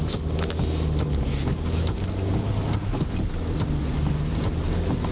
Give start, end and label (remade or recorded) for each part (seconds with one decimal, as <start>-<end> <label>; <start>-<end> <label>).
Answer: 0.0-5.1 recorded